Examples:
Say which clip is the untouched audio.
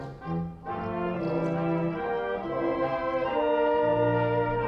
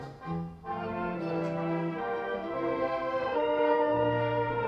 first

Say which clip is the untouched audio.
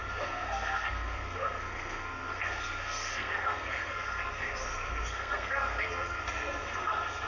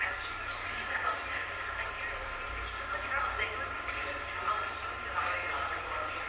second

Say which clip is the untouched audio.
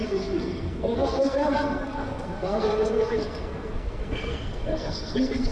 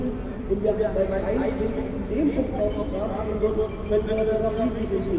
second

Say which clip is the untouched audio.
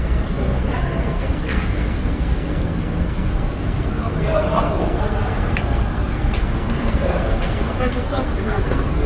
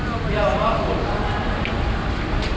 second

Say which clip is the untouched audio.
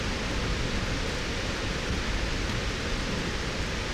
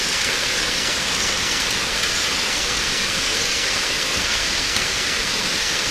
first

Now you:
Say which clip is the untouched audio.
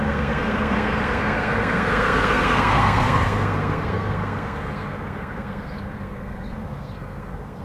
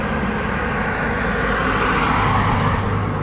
second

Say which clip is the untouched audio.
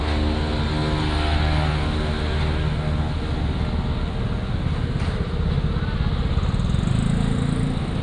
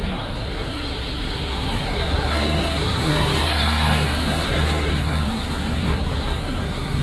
first